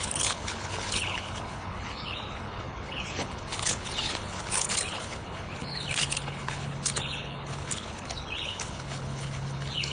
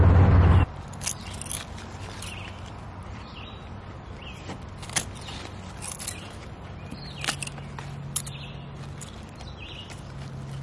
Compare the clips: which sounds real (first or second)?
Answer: second